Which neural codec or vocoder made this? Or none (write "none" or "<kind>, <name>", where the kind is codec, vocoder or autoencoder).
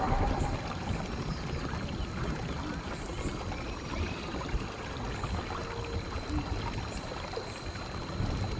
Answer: none